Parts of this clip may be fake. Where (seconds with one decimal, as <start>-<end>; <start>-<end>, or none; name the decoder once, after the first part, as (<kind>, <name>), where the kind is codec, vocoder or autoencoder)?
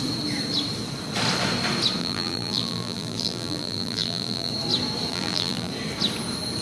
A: 2.0-4.5 (vocoder, BigVGAN v2); 5.1-5.7